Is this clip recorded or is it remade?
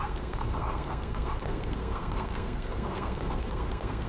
remade